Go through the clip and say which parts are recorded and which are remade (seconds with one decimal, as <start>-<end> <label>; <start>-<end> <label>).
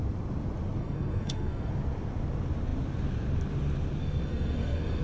0.0-0.8 recorded; 0.8-1.7 remade; 1.7-4.0 recorded; 4.0-5.0 remade